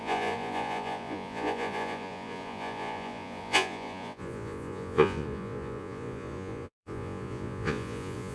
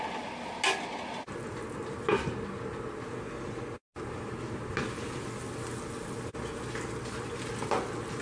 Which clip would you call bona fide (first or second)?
second